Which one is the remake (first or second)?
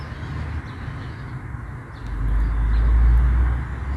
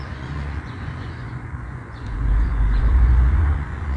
second